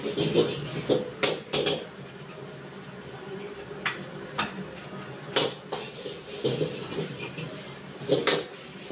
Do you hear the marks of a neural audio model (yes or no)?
no